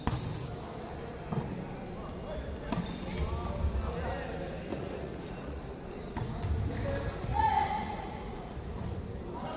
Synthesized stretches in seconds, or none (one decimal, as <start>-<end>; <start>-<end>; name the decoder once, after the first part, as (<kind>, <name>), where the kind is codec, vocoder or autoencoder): 4.7-5.6 (vocoder, Vocos); 7.3-8.5